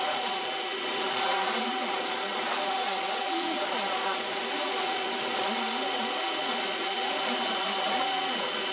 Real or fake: fake